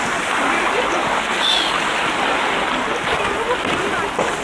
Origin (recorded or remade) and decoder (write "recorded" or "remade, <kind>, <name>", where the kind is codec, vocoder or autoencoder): recorded